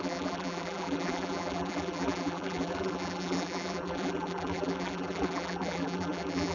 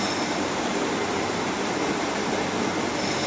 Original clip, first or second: second